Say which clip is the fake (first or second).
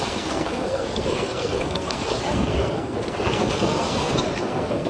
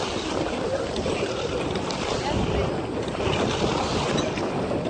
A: first